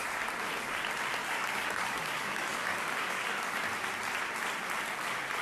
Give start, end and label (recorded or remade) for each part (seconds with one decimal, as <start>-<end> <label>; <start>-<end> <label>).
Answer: 0.0-1.2 recorded; 1.2-3.6 remade; 3.6-5.4 recorded